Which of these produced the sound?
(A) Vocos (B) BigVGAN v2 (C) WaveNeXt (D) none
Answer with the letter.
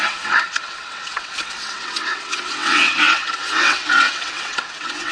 C